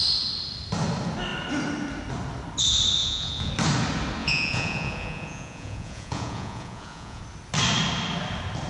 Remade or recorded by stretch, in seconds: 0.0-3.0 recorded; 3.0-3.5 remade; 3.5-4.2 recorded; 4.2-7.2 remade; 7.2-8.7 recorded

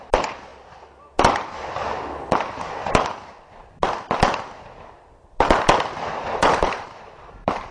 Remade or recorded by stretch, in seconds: 0.0-6.4 recorded; 6.4-7.7 remade

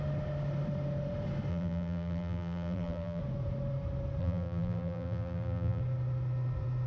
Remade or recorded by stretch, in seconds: 0.0-1.5 recorded; 1.5-3.2 remade; 3.2-4.2 recorded; 4.2-5.8 remade; 5.8-6.9 recorded

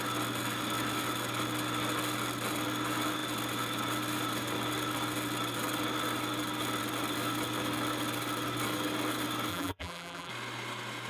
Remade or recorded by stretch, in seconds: 0.0-9.5 recorded; 9.5-10.3 remade; 10.3-11.1 recorded

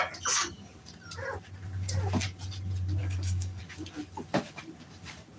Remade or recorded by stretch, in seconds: 0.0-3.0 recorded; 3.0-3.6 remade; 3.6-5.4 recorded